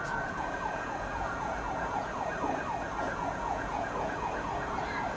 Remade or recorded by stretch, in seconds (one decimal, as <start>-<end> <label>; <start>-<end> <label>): 0.0-2.3 remade; 2.3-3.0 recorded; 3.0-5.2 remade